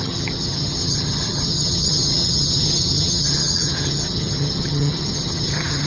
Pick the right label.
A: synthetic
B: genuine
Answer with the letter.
A